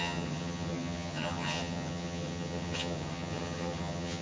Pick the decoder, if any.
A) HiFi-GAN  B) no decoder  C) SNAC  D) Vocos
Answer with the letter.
A